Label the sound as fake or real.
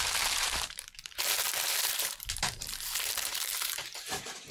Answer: fake